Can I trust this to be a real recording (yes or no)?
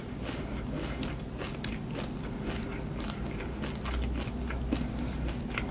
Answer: yes